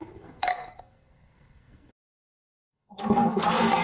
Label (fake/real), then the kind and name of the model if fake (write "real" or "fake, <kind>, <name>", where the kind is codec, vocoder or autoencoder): fake, codec, SNAC